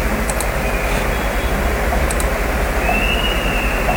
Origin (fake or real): real